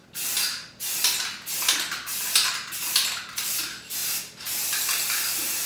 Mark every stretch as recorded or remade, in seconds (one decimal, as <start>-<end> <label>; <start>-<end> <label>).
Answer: 0.0-5.7 recorded